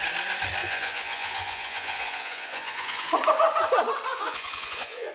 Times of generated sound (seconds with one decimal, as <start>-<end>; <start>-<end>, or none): 0.6-3.1; 4.1-5.1